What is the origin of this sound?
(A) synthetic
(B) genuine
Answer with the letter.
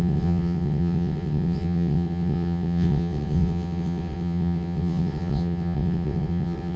A